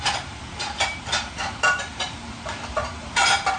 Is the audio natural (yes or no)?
no